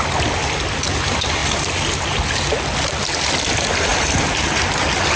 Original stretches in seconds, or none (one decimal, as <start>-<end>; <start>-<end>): 0.0-5.2